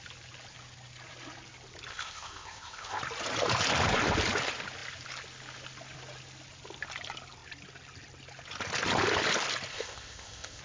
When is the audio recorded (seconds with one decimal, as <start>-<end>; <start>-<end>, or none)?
0.0-1.9; 3.0-9.7